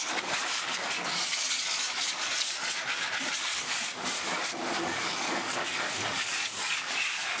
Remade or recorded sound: remade